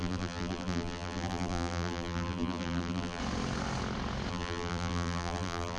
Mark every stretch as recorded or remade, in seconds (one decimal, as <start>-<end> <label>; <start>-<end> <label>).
0.0-3.2 remade; 3.2-4.3 recorded; 4.3-5.8 remade